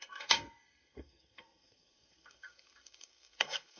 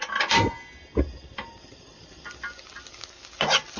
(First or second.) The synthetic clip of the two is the first